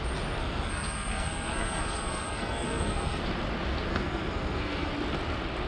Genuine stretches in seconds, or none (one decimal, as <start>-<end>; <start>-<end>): 0.0-0.4; 3.2-3.9; 4.9-5.7